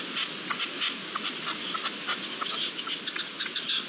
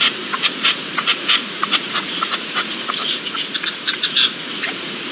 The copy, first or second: second